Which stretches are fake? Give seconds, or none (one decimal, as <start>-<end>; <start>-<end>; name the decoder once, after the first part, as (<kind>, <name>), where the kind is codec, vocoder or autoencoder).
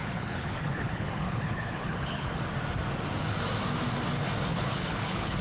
0.0-2.4 (codec, HILCodec); 4.5-5.4